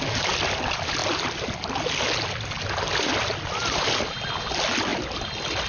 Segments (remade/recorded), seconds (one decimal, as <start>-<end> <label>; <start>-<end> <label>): 0.0-5.7 recorded